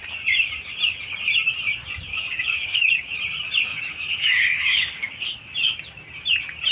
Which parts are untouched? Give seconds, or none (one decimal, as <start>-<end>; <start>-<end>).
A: 0.0-2.1; 2.9-3.7; 5.1-6.7